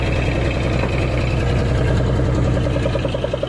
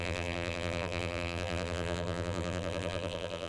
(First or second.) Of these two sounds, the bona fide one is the first